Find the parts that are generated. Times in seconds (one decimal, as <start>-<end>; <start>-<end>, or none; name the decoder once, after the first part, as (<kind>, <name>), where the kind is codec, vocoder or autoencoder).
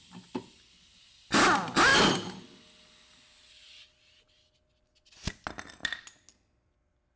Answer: none